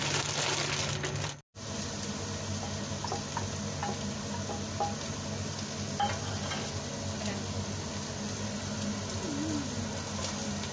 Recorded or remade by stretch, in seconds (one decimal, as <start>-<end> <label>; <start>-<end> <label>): 0.0-10.7 recorded